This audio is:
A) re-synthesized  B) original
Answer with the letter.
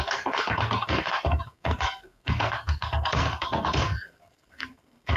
A